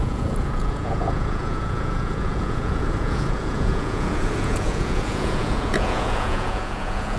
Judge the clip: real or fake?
fake